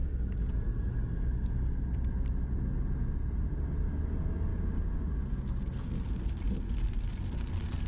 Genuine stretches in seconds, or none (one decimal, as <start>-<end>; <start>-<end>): 0.0-7.9